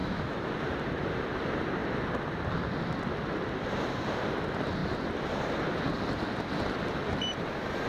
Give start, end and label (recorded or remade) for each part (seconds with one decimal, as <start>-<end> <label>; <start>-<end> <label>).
0.0-0.5 remade; 0.5-7.9 recorded

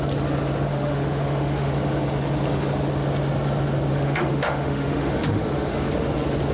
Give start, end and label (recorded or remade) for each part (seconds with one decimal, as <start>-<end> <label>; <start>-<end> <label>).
0.0-0.7 recorded; 0.7-1.7 remade; 1.7-3.9 recorded; 3.9-5.9 remade; 5.9-6.5 recorded

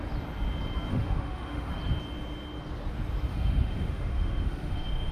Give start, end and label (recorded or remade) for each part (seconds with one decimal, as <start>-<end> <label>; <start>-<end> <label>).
0.0-0.9 recorded; 0.9-1.7 remade; 1.7-3.3 recorded; 3.3-5.1 remade

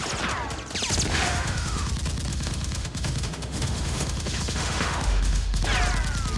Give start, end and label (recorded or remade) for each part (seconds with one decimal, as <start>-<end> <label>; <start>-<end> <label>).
0.0-1.1 recorded; 1.1-1.9 remade; 1.9-2.3 recorded; 2.3-5.6 remade; 5.6-6.4 recorded

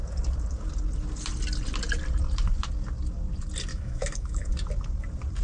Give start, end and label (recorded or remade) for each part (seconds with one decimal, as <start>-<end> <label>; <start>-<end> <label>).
0.0-3.7 recorded; 3.7-4.5 remade; 4.5-5.4 recorded

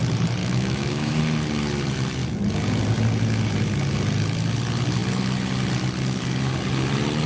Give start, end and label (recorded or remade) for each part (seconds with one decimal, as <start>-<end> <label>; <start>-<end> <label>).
0.0-0.4 recorded; 0.4-1.2 remade; 1.2-7.3 recorded

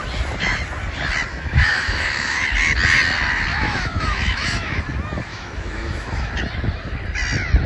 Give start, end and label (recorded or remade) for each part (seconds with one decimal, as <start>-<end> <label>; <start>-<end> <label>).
0.0-1.3 recorded; 1.3-2.4 remade; 2.4-3.5 recorded; 3.5-4.8 remade; 4.8-5.3 recorded; 5.3-6.3 remade; 6.3-7.7 recorded

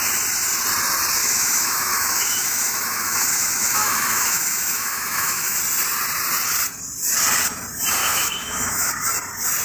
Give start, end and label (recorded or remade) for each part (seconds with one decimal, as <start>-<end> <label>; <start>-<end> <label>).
0.0-1.2 recorded; 1.2-5.6 remade; 5.6-8.0 recorded; 8.0-8.9 remade; 8.9-9.6 recorded